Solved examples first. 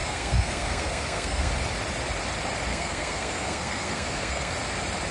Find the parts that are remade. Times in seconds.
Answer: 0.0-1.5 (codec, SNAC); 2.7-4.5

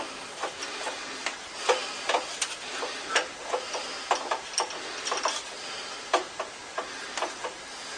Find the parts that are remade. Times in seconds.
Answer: none

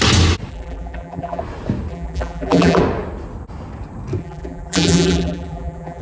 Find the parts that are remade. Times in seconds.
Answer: 0.5-1.4 (vocoder, BigVGAN v2); 1.9-2.8; 4.2-6.0

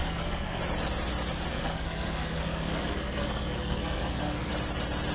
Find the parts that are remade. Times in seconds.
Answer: 0.0-0.6 (codec, SNAC); 1.5-4.5

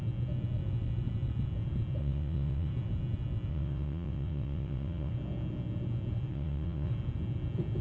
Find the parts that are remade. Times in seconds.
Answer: 2.0-2.7 (vocoder, WaveNeXt); 3.5-5.1; 6.3-6.9

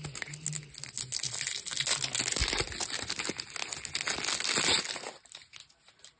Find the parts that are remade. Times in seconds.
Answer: none

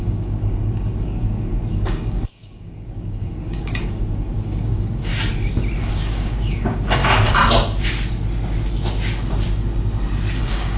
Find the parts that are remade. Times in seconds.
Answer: 0.0-5.1 (codec, DAC); 5.8-7.0; 10.4-10.8

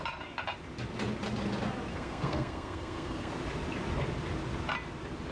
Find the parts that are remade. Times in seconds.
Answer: 1.9-3.3 (codec, SNAC)